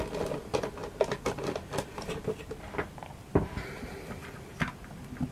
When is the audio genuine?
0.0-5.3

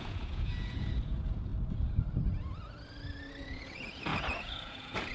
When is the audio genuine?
1.5-3.4

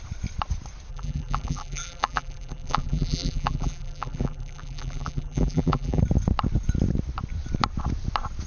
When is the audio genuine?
0.0-0.9; 6.0-8.5

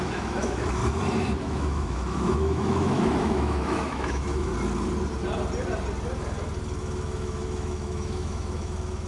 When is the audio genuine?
0.8-1.4; 4.5-6.8

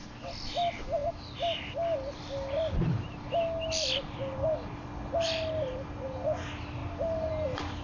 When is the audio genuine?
0.0-7.8